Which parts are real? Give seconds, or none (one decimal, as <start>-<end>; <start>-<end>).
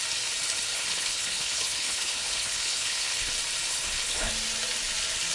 0.0-0.7; 3.3-3.7; 4.3-5.3